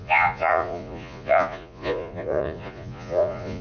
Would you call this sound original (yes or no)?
no